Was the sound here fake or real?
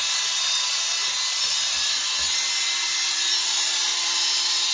real